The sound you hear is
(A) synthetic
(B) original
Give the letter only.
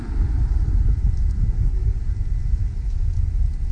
B